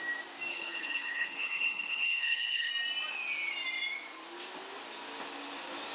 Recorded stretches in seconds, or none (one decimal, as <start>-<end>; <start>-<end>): 0.0-0.5; 2.7-5.9